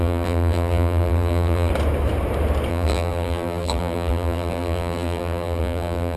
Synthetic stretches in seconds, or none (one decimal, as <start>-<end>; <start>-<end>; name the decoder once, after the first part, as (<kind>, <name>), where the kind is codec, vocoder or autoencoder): 0.0-1.7 (vocoder, BigVGAN v2); 2.7-6.2